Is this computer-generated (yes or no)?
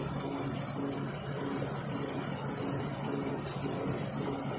no